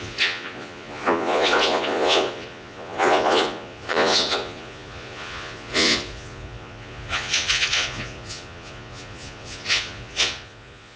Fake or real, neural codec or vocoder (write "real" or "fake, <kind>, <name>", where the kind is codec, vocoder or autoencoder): fake, vocoder, Vocos